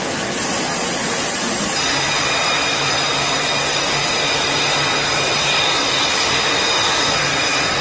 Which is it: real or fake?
real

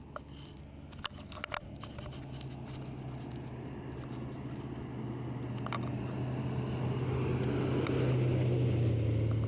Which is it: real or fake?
real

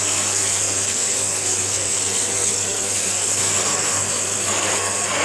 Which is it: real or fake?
fake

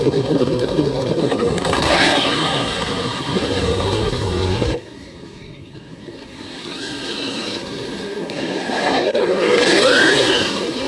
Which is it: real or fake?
fake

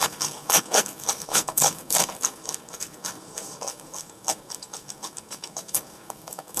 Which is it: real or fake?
fake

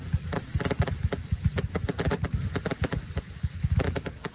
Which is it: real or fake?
real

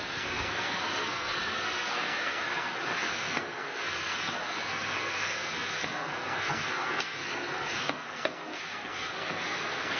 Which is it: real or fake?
fake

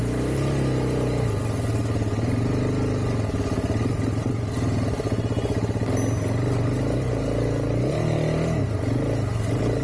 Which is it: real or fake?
real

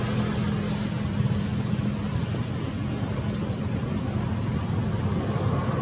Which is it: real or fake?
real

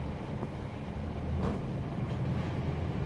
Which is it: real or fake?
real